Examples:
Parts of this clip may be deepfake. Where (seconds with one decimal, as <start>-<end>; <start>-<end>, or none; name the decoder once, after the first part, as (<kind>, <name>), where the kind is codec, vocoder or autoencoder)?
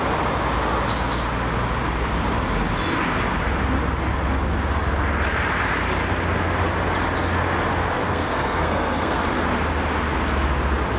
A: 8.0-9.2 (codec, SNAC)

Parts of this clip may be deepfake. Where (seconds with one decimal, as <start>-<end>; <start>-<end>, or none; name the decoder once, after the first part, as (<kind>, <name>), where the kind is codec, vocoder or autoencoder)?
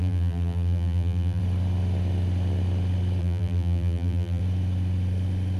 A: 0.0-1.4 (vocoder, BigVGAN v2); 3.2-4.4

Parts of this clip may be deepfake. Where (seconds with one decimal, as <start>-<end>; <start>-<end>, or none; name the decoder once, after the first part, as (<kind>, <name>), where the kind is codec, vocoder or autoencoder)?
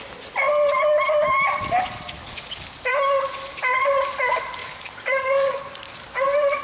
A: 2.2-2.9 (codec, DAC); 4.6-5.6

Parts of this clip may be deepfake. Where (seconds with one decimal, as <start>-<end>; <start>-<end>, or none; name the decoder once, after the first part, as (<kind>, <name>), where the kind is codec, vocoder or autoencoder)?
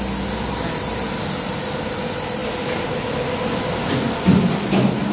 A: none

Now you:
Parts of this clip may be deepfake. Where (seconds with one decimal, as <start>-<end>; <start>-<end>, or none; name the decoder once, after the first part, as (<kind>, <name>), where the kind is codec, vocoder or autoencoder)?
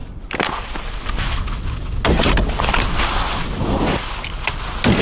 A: none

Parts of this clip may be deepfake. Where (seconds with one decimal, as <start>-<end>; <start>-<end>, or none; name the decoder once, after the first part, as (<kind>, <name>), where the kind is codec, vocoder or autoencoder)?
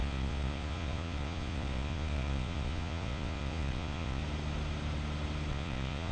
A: 0.0-4.2 (vocoder, Vocos); 5.5-6.1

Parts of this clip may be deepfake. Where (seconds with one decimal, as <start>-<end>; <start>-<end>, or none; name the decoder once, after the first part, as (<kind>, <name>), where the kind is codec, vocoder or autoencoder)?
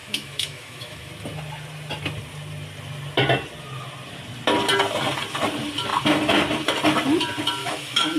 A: 0.0-1.1 (autoencoder, DAC-VAE); 7.6-8.2